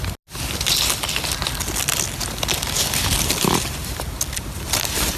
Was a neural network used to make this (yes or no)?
no